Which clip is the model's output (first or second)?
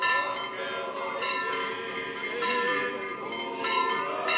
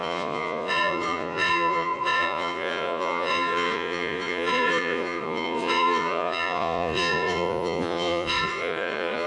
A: second